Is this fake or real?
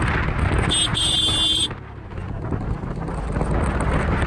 real